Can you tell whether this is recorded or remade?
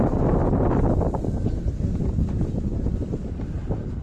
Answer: recorded